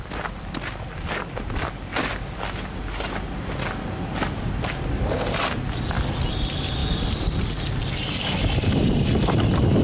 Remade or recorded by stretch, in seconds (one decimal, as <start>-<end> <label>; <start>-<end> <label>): 0.0-9.8 recorded